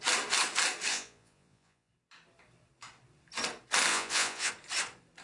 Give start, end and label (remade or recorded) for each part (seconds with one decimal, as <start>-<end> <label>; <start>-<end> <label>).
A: 0.0-0.9 recorded; 0.9-1.9 remade; 1.9-3.9 recorded; 3.9-4.5 remade; 4.5-5.2 recorded